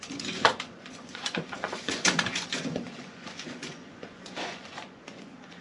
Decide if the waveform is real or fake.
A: fake